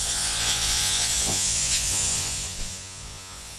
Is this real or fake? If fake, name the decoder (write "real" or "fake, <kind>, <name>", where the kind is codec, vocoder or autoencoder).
fake, vocoder, Vocos